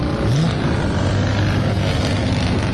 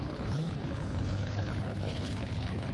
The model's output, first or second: second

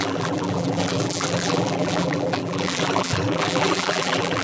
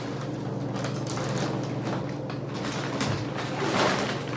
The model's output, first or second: first